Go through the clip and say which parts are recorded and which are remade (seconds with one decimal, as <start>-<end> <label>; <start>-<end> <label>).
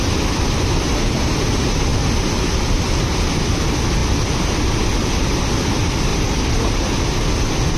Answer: 0.0-6.1 recorded; 6.1-7.0 remade; 7.0-7.8 recorded